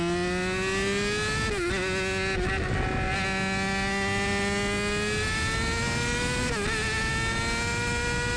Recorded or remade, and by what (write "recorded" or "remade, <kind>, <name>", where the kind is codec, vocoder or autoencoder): recorded